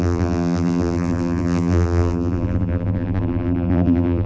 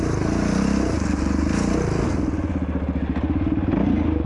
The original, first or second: second